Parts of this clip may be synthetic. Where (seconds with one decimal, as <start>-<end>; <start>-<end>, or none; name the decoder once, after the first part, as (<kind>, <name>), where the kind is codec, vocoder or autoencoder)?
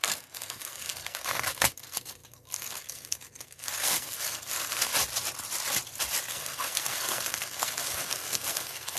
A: 0.0-4.9 (codec, SNAC); 6.3-9.0